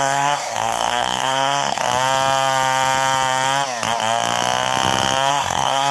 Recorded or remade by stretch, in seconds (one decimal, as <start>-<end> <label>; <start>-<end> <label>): 0.0-1.8 remade; 1.8-5.3 recorded; 5.3-5.9 remade